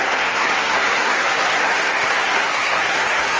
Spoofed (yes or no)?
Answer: yes